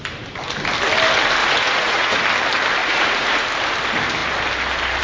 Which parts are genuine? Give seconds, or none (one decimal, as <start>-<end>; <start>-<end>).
0.0-1.4; 2.2-2.8; 3.4-5.0